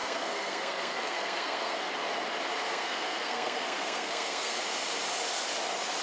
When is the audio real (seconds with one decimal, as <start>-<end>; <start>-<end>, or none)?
1.9-2.7; 4.6-6.0